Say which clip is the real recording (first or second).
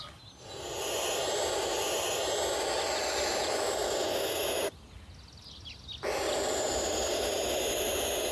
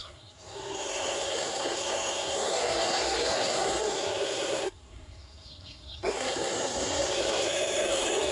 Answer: first